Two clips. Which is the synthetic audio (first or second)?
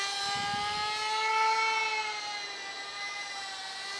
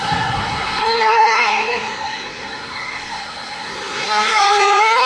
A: second